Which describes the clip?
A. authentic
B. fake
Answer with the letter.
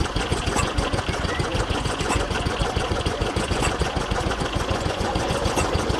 B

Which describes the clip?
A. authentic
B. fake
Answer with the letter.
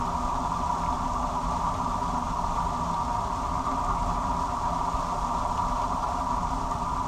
A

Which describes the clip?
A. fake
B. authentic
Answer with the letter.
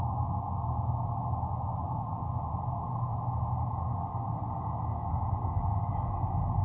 B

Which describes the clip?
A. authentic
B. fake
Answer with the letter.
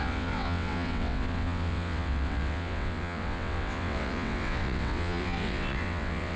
B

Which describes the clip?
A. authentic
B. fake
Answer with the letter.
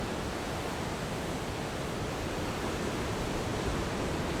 A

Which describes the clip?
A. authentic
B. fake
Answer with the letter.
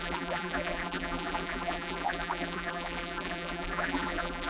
B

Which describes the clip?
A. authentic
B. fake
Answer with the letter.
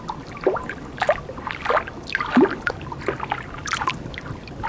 A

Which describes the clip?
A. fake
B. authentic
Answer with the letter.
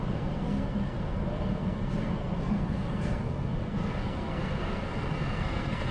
A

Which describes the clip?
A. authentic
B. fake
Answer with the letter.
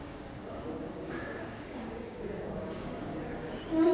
B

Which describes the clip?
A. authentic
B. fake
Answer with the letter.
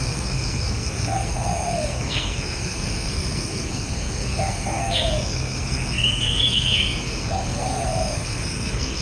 B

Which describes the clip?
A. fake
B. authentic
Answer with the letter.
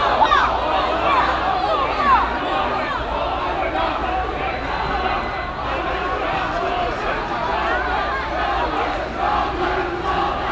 B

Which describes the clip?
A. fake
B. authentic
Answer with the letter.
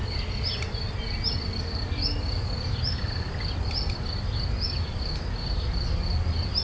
B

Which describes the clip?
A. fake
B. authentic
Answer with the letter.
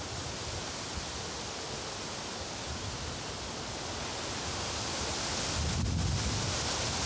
B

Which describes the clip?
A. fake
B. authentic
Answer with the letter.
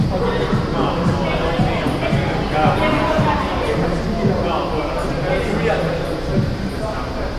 B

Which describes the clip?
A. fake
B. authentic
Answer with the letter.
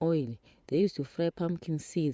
A